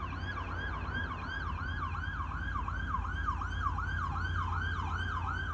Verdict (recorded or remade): recorded